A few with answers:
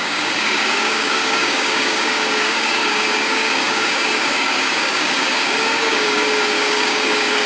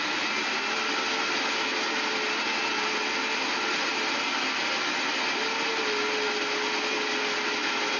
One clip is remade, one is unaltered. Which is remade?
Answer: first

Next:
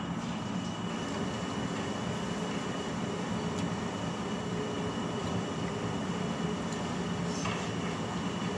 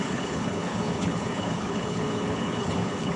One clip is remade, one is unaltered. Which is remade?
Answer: second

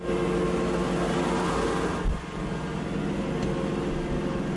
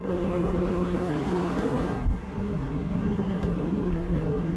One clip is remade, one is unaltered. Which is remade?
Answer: second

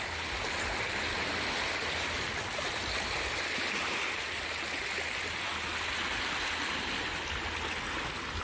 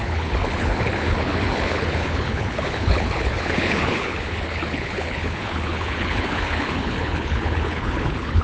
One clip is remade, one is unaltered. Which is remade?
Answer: second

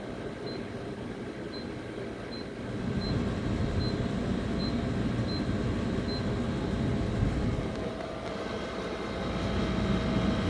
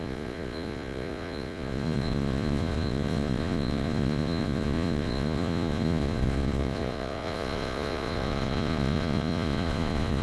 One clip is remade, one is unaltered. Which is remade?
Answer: second